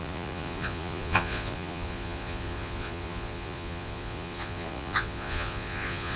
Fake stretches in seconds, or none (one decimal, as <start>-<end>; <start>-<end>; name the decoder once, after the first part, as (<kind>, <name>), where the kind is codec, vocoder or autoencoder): 0.0-6.2 (vocoder, Vocos)